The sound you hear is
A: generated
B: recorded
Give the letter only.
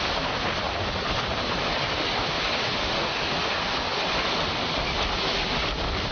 B